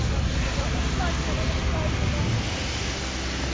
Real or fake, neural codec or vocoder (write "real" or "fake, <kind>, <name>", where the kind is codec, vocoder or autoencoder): real